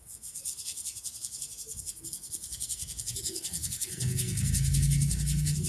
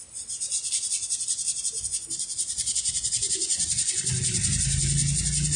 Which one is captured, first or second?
second